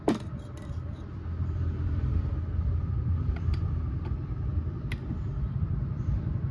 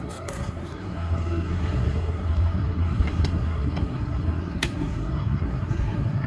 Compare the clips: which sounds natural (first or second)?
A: first